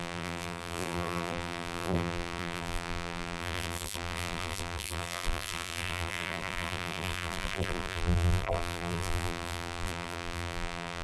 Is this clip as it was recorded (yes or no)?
no